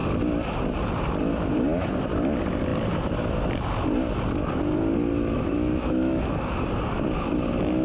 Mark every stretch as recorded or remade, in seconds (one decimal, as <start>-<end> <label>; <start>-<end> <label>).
0.0-5.2 recorded; 5.2-6.5 remade; 6.5-7.8 recorded